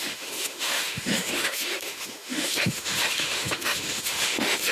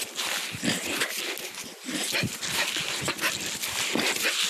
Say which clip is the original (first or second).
second